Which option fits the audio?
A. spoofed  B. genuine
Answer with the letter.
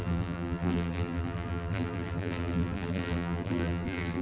A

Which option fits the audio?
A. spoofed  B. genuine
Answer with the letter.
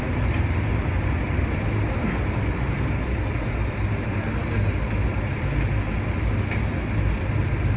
B